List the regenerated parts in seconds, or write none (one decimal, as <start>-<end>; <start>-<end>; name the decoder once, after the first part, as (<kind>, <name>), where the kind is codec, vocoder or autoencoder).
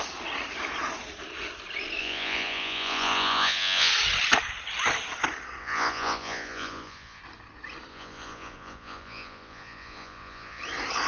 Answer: 2.0-3.9 (vocoder, Vocos); 5.6-7.2; 7.9-10.6